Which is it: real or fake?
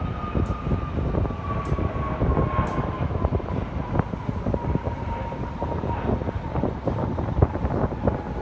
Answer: real